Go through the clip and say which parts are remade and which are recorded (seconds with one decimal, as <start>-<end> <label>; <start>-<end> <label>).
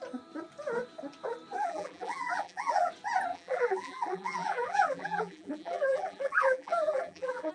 0.0-1.6 recorded; 1.6-2.9 remade; 2.9-3.3 recorded; 3.3-7.5 remade